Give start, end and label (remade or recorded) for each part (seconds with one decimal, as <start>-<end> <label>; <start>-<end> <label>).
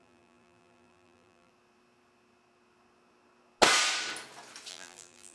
0.0-1.5 remade; 1.5-4.7 recorded; 4.7-5.3 remade